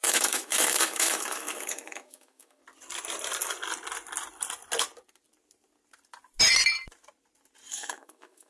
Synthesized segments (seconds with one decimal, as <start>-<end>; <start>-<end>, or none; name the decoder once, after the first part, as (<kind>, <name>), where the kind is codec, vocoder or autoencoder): 0.0-2.6 (autoencoder, DAC-VAE); 7.7-8.5